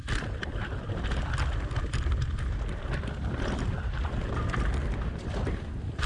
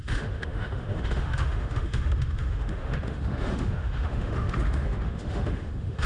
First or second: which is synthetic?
second